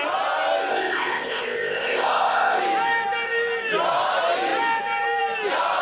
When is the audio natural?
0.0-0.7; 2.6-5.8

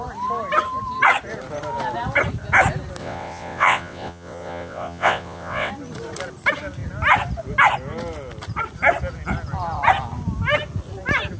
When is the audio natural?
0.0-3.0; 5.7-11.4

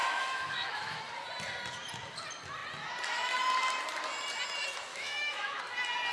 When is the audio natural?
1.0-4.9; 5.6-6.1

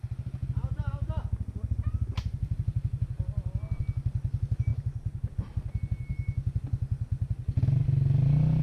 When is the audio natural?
0.0-2.1; 3.0-8.6

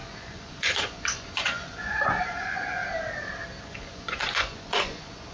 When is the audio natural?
2.8-3.6

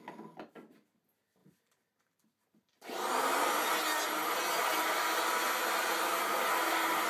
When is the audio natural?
0.0-1.4; 3.5-7.1

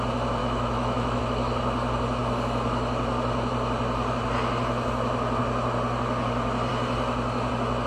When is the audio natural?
0.0-0.4; 1.2-7.9

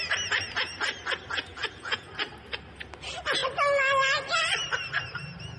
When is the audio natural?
0.0-1.6; 2.1-5.6